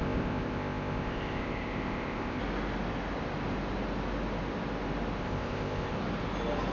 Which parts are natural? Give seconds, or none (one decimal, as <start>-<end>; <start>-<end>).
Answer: 2.4-5.2; 6.0-6.7